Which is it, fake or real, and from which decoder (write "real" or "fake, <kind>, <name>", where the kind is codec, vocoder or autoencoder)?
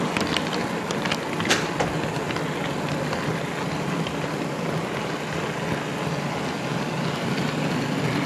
real